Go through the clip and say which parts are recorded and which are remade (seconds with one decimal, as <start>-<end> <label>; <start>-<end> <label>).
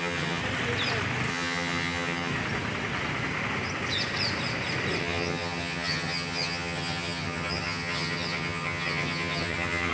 0.0-0.4 remade; 0.4-1.3 recorded; 1.3-2.3 remade; 2.3-5.0 recorded; 5.0-9.9 remade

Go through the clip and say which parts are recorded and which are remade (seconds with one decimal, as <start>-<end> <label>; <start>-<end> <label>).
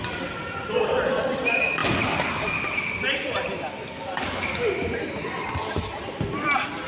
0.0-6.9 recorded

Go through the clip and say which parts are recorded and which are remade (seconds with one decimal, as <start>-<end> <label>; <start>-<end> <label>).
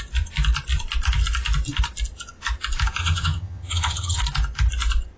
0.0-3.0 recorded; 3.0-4.2 remade; 4.2-5.2 recorded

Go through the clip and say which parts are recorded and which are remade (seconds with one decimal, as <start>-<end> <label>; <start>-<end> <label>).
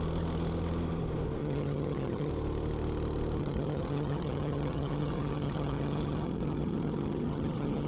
0.0-1.4 recorded; 1.4-2.3 remade; 2.3-3.4 recorded; 3.4-7.9 remade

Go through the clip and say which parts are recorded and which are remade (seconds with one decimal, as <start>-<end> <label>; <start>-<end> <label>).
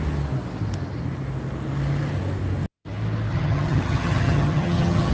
0.0-3.3 recorded; 3.3-5.1 remade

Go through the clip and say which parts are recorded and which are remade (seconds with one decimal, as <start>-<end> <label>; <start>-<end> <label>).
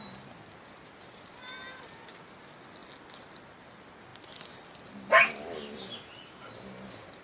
0.0-7.2 recorded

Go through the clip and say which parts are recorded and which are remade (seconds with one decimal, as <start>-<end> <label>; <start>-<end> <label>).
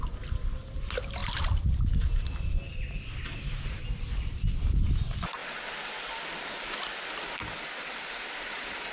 0.0-8.9 recorded